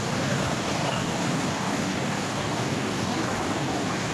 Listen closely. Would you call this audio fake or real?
fake